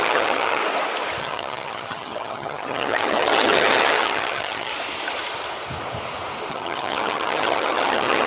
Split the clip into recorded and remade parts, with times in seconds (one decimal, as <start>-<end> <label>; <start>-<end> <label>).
0.0-0.6 remade; 0.6-1.2 recorded; 1.2-4.7 remade; 4.7-6.5 recorded; 6.5-8.3 remade

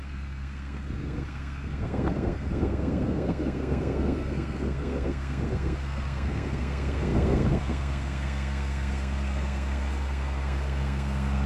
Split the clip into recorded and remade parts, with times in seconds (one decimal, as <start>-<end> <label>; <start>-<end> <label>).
0.0-11.5 remade

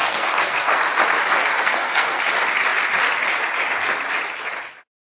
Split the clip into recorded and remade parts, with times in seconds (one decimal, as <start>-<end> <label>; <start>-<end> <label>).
0.0-0.8 remade; 0.8-1.4 recorded; 1.4-2.2 remade; 2.2-5.0 recorded

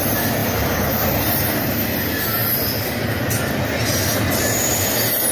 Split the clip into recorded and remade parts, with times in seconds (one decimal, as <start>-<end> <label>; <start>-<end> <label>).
0.0-0.4 recorded; 0.4-1.2 remade; 1.2-2.4 recorded; 2.4-3.7 remade; 3.7-5.3 recorded

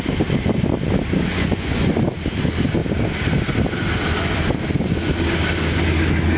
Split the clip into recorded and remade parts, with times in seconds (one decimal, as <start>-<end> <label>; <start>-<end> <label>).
0.0-1.3 recorded; 1.3-1.9 remade; 1.9-6.4 recorded

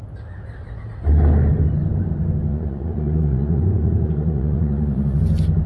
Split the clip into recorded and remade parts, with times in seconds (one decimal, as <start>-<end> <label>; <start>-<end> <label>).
0.0-2.5 recorded; 2.5-5.2 remade; 5.2-5.7 recorded